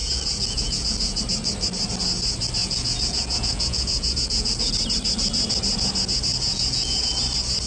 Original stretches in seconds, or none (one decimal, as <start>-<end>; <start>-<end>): 1.2-2.6; 4.7-6.3; 7.1-7.7